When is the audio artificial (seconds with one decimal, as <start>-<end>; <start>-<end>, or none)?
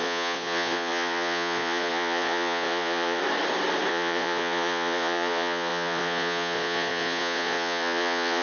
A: 0.0-3.2; 3.9-8.4